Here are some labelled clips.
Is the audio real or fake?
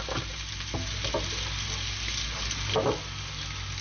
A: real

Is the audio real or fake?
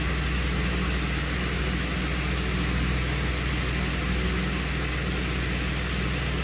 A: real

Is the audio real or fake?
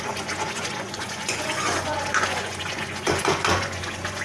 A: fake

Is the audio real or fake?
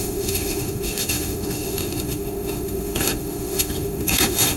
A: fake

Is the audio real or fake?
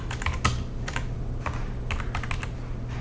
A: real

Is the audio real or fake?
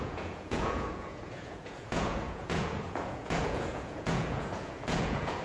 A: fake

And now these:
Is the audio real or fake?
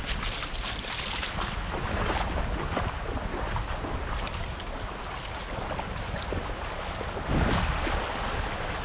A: real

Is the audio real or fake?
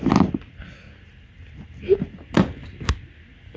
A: real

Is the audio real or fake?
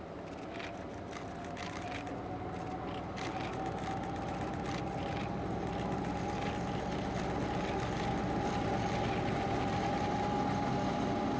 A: real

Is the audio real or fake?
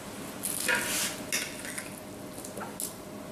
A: real